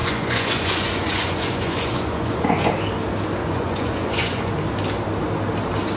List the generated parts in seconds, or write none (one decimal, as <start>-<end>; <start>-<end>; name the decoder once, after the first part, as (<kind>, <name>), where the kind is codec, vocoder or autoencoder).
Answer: 0.0-2.7 (vocoder, Vocos); 3.4-4.5